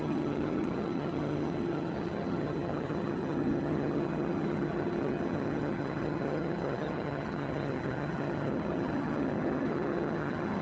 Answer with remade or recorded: remade